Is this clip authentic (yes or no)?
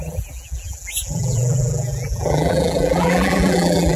no